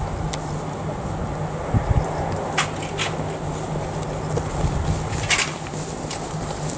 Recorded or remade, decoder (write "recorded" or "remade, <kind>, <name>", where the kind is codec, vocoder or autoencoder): recorded